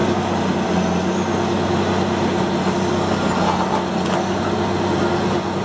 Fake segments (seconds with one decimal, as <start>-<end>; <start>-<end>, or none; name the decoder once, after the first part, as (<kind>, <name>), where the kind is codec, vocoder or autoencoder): none